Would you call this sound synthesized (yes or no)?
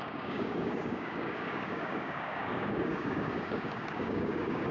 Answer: yes